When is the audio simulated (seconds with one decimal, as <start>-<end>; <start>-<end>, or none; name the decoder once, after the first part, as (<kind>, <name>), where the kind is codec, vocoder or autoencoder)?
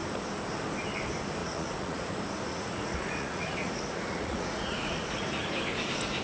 1.4-2.1 (vocoder, Vocos); 2.5-5.5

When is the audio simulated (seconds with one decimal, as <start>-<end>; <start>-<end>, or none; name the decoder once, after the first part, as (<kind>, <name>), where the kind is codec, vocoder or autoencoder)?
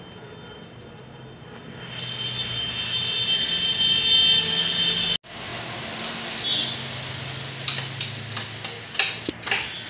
none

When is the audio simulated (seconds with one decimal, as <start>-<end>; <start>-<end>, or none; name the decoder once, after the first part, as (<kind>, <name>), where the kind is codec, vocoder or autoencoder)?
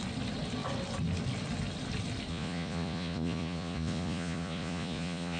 2.3-5.4 (vocoder, Vocos)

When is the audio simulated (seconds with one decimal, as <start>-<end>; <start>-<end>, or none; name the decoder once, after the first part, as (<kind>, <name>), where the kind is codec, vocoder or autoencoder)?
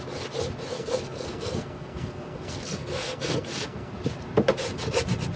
0.7-3.9 (codec, SNAC)